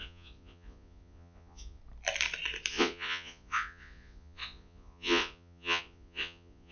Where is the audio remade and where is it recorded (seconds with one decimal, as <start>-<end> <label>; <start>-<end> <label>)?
0.0-1.8 remade; 1.8-2.7 recorded; 2.7-6.7 remade